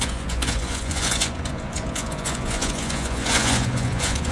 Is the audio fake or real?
fake